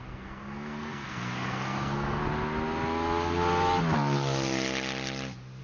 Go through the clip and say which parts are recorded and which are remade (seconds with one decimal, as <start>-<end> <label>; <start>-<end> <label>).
0.0-2.2 remade; 2.2-5.6 recorded